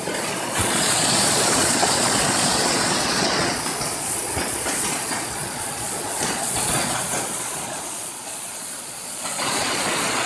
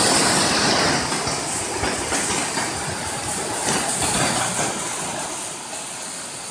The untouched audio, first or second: second